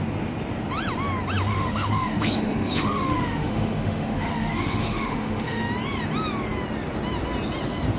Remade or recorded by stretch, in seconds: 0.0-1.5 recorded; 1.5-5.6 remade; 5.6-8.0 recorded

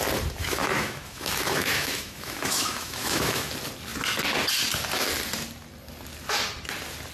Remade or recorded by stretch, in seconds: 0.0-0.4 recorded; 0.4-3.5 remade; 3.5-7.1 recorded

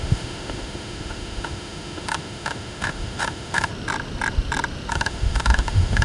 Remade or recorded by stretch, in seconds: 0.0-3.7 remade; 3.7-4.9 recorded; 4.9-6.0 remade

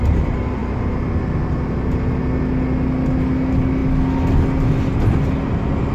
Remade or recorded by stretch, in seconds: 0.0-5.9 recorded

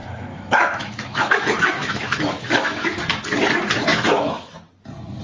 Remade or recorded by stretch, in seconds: 0.0-3.0 remade; 3.0-3.9 recorded; 3.9-4.5 remade; 4.5-5.2 recorded

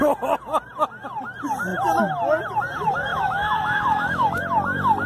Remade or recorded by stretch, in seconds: 0.0-3.1 recorded; 3.1-4.4 remade; 4.4-5.1 recorded

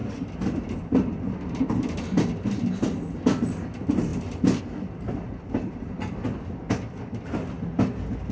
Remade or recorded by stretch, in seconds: 0.0-8.3 recorded